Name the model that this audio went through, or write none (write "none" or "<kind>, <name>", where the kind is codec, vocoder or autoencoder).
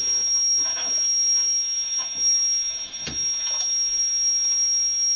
autoencoder, DAC-VAE